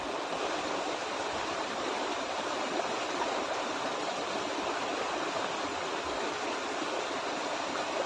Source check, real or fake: fake